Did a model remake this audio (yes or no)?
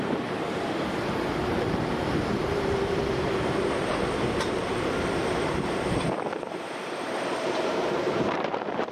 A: yes